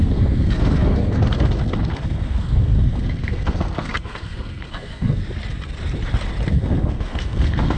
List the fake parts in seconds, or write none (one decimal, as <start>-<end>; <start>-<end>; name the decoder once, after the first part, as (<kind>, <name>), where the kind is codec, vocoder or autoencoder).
0.0-5.2 (codec, SNAC); 6.5-7.8